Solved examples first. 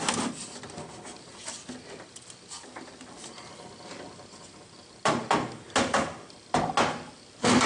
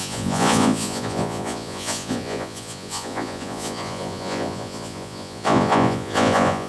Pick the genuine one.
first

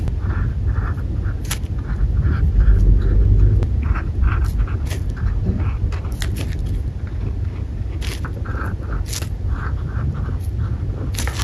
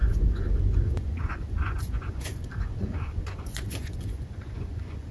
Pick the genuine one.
first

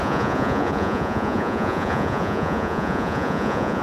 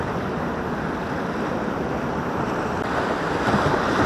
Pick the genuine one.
second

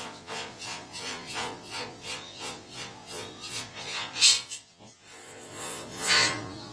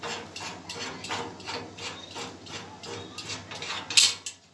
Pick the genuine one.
second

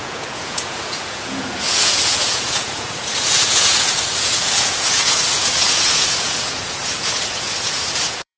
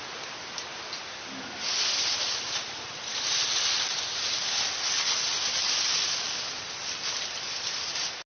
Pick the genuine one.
second